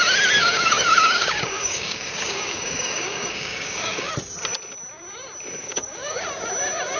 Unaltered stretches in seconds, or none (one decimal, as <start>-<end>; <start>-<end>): 0.0-0.4; 4.1-5.6; 6.2-7.0